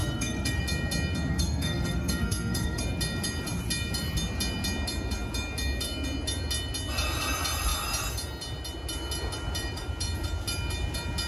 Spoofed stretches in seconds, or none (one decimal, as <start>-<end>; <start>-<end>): 0.0-0.6; 1.3-2.8